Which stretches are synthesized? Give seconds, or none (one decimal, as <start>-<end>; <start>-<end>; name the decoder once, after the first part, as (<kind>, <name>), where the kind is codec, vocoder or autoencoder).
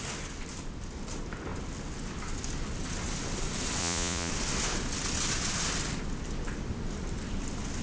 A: 3.8-4.3 (vocoder, Vocos)